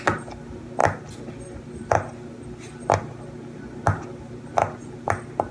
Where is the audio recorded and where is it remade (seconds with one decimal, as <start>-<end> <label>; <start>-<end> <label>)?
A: 0.0-5.5 recorded

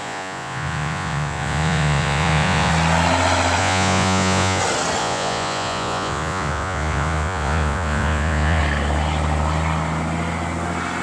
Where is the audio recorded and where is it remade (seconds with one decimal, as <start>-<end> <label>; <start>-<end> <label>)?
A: 0.0-2.7 remade; 2.7-3.6 recorded; 3.6-4.6 remade; 4.6-5.0 recorded; 5.0-8.6 remade; 8.6-11.0 recorded

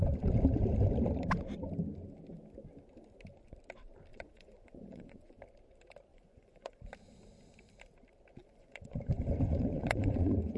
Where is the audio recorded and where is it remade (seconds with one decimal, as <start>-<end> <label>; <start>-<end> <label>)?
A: 0.0-4.1 recorded; 4.1-5.4 remade; 5.4-6.1 recorded; 6.1-6.9 remade; 6.9-8.4 recorded; 8.4-10.6 remade

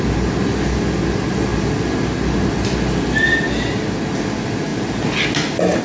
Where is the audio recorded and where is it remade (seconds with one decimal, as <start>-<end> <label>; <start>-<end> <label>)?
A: 0.0-5.8 recorded